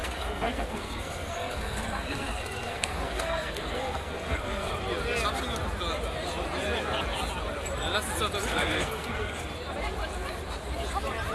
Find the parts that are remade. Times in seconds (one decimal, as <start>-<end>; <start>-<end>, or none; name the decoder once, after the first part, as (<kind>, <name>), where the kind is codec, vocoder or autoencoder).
0.0-4.7 (codec, SNAC); 8.5-9.4